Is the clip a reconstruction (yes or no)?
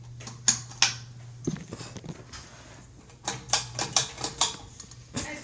no